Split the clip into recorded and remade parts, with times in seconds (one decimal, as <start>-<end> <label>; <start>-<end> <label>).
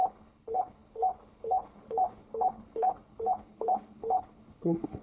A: 0.0-5.0 remade